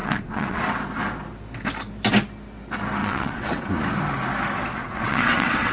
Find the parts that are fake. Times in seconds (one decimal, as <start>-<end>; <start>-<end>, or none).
0.0-0.6; 3.0-3.7; 4.8-5.7